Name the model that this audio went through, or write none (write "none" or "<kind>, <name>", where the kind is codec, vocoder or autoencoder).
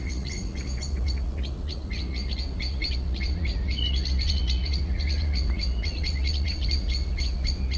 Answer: vocoder, Vocos